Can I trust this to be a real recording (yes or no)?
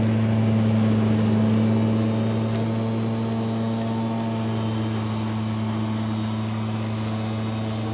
yes